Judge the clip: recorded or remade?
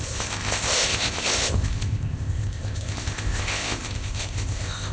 remade